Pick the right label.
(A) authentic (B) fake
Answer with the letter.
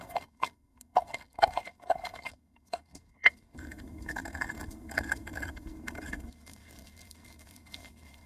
B